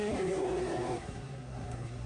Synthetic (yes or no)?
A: yes